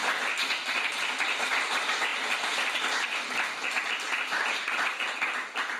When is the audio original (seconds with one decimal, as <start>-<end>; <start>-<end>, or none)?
0.0-5.8